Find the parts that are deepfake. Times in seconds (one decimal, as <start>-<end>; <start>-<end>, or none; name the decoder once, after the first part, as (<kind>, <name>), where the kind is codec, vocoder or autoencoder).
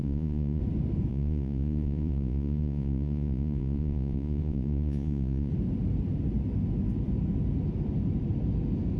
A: 0.0-0.6 (vocoder, Vocos); 1.1-5.5